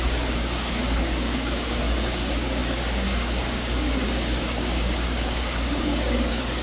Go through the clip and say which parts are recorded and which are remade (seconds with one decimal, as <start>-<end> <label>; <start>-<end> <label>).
0.0-6.6 remade